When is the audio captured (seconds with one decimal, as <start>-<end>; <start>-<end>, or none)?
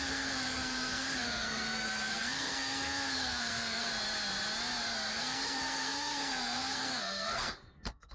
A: 3.9-5.1